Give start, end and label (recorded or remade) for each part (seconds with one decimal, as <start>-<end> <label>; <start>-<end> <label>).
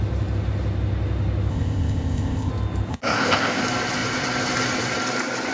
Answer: 0.0-1.5 recorded; 1.5-2.5 remade; 2.5-2.9 recorded; 2.9-3.6 remade; 3.6-5.5 recorded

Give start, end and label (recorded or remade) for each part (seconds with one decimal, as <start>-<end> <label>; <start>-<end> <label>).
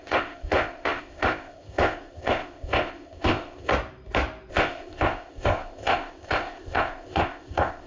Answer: 0.0-3.7 remade; 3.7-4.5 recorded; 4.5-7.9 remade